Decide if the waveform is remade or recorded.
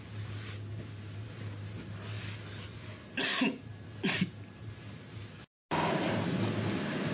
recorded